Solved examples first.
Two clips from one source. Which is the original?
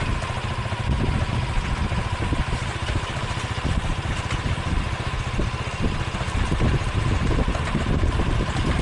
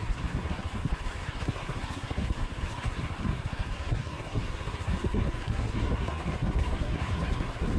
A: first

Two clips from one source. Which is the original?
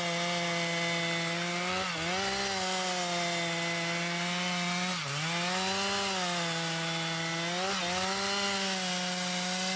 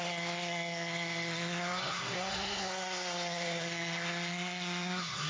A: first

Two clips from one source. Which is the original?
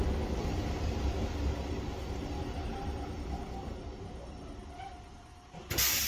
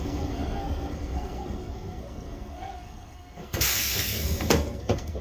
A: first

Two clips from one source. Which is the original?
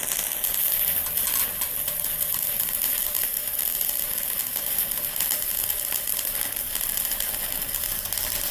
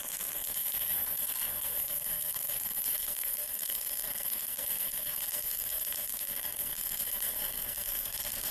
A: first